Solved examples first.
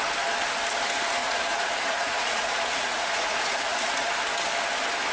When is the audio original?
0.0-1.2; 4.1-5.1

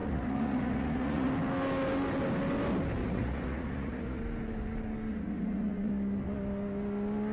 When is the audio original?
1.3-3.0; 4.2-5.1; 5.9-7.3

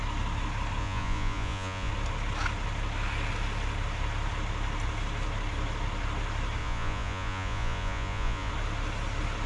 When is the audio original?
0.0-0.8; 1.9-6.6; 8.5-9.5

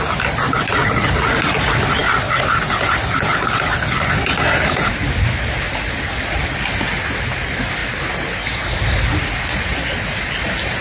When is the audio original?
0.0-10.8

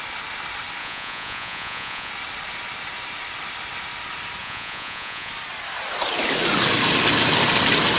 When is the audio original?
0.0-0.8; 2.1-4.4; 5.3-8.0

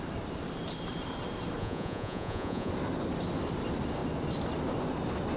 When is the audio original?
0.0-1.6; 2.7-5.4

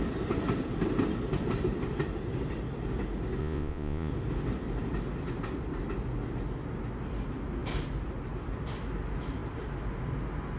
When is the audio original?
0.0-3.4; 4.1-10.6